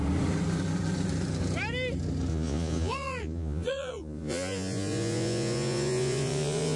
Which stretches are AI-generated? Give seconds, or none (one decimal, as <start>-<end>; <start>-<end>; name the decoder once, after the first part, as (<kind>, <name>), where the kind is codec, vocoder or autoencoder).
2.3-6.8 (vocoder, Vocos)